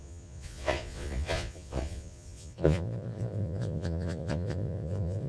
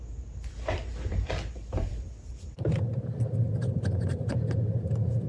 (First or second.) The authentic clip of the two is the second